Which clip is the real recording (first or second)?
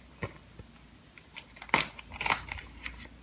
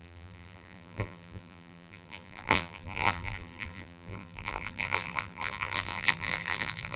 first